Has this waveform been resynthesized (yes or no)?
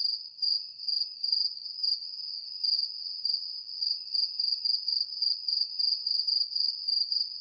no